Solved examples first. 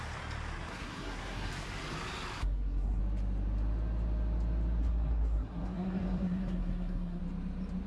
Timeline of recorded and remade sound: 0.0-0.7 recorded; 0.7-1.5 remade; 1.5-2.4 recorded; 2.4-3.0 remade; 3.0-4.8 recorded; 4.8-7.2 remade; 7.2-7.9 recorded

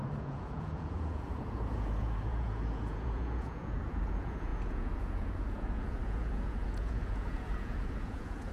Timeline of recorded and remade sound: 0.0-8.5 remade

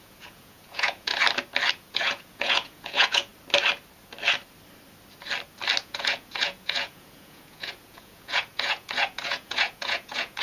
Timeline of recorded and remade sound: 0.0-1.1 remade; 1.1-1.7 recorded; 1.7-3.3 remade; 3.3-5.8 recorded; 5.8-10.4 remade

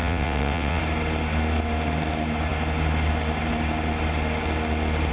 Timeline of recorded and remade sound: 0.0-0.8 remade; 0.8-5.1 recorded

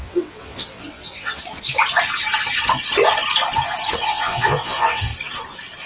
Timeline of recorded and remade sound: 0.0-1.4 remade; 1.4-4.0 recorded; 4.0-5.1 remade; 5.1-5.9 recorded

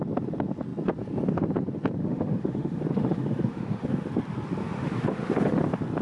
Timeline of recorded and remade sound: 0.0-2.0 recorded; 2.0-4.1 remade; 4.1-4.6 recorded; 4.6-5.6 remade; 5.6-6.0 recorded